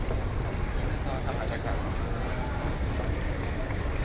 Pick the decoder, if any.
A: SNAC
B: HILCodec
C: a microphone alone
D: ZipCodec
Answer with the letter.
C